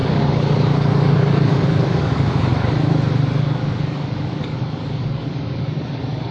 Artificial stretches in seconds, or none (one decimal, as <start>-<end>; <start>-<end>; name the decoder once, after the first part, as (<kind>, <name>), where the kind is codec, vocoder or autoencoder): 0.0-2.5 (codec, DAC); 3.4-6.3

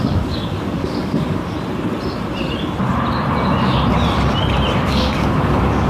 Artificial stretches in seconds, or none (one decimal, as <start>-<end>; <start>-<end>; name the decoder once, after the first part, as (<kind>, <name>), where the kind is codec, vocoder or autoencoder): 0.0-1.4 (codec, DAC); 4.9-5.9

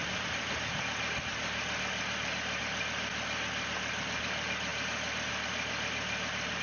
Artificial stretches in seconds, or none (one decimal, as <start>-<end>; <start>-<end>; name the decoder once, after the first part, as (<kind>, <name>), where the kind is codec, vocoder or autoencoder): none

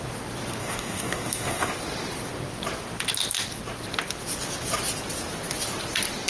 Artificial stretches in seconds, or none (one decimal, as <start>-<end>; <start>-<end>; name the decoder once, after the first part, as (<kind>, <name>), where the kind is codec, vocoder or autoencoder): 0.6-1.7 (codec, DAC)

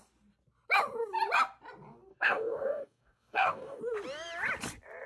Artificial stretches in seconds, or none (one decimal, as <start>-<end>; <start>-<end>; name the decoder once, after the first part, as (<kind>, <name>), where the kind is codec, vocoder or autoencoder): 2.1-3.8 (codec, DAC)